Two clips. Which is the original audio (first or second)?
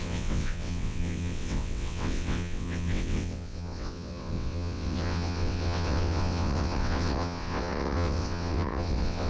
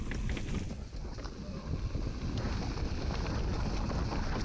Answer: second